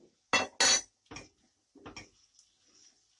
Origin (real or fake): real